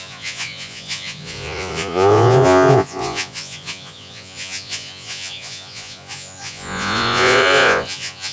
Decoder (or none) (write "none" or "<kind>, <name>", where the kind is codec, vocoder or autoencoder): vocoder, Vocos